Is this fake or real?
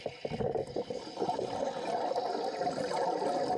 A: real